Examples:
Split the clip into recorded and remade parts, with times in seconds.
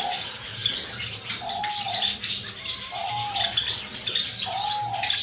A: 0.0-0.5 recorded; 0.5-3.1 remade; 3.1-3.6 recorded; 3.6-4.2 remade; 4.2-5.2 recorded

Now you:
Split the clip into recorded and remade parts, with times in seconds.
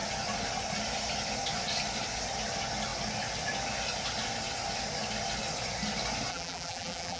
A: 0.0-6.3 recorded; 6.3-7.2 remade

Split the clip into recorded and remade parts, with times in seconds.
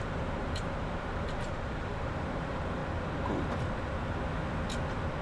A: 0.0-2.8 remade; 2.8-5.2 recorded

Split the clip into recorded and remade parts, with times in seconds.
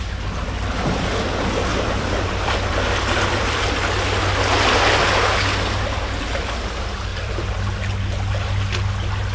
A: 0.0-1.7 recorded; 1.7-3.6 remade; 3.6-7.1 recorded; 7.1-7.6 remade; 7.6-9.3 recorded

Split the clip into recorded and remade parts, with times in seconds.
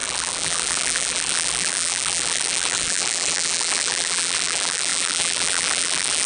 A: 0.0-6.3 remade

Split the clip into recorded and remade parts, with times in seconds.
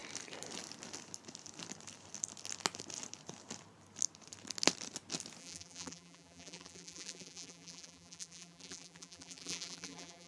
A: 0.0-5.4 recorded; 5.4-10.3 remade